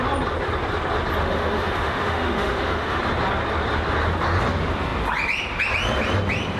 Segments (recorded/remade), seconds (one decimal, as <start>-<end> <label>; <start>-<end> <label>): 0.0-1.2 recorded; 1.2-3.0 remade; 3.0-6.6 recorded